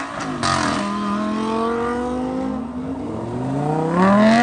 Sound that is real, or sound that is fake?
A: real